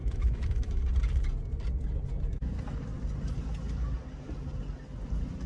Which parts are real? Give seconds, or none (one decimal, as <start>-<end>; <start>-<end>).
0.8-5.5